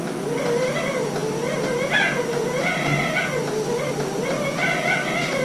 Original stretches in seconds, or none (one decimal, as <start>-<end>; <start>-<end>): 0.0-5.4